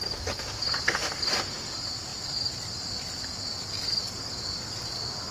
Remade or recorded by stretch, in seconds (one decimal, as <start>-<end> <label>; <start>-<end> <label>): 0.0-5.3 recorded